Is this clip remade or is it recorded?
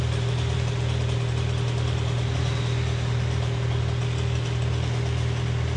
recorded